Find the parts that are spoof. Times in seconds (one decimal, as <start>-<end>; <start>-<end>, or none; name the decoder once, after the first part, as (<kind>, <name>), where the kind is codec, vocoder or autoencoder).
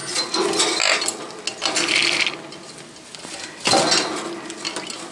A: none